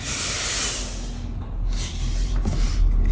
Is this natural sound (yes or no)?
yes